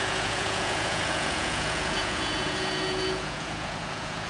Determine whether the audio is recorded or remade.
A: remade